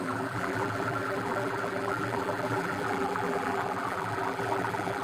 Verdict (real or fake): fake